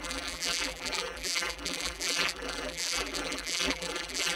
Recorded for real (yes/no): no